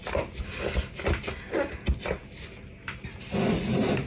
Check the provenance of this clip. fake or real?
real